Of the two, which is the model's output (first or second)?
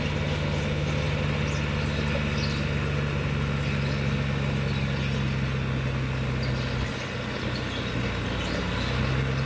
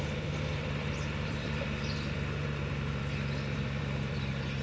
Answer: second